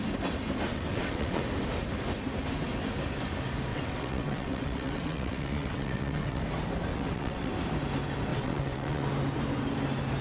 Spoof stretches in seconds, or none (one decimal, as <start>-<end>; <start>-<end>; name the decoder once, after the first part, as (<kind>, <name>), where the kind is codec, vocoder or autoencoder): 0.7-1.4 (vocoder, WaveNeXt); 3.7-6.4; 6.9-7.5; 8.3-9.1

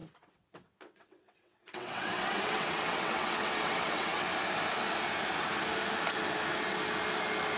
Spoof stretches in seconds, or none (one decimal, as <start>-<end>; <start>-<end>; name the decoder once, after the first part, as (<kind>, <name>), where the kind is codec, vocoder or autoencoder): 0.0-4.3 (vocoder, WaveNeXt)

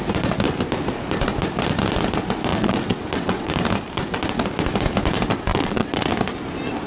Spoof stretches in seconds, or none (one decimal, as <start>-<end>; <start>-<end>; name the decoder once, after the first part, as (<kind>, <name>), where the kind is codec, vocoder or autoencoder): 2.5-3.5 (vocoder, WaveNeXt); 5.5-6.1

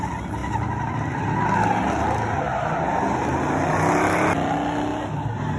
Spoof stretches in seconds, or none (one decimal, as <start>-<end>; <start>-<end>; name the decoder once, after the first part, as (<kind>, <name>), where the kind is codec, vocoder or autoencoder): none

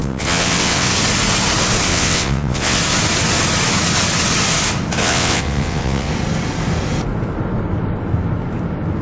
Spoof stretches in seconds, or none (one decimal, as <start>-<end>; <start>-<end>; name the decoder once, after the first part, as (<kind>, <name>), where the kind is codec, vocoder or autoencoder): 0.0-0.9 (vocoder, WaveNeXt); 1.9-2.8; 5.0-6.1

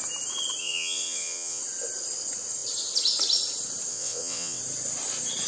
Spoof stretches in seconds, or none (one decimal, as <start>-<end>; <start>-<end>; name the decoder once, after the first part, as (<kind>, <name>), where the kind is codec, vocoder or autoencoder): 0.6-1.6 (vocoder, WaveNeXt); 3.9-4.6

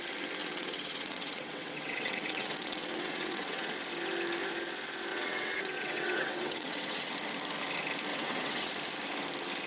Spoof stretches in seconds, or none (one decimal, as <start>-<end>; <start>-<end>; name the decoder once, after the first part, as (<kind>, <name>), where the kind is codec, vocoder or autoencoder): 0.4-3.7 (vocoder, WaveNeXt); 5.1-7.1; 8.1-8.7

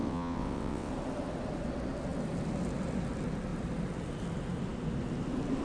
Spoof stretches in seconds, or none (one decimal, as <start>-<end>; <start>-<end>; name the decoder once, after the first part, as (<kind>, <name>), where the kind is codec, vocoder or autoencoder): 0.0-0.9 (vocoder, WaveNeXt)